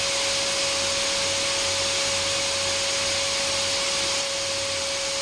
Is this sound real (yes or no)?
yes